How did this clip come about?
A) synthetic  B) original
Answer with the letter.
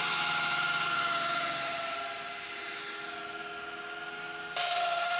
B